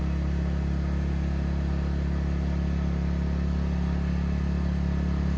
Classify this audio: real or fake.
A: real